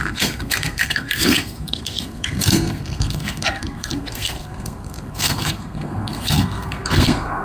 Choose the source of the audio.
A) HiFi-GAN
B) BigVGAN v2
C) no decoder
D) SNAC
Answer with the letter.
D